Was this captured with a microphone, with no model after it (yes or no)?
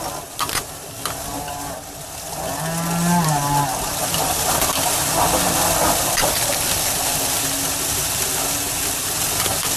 yes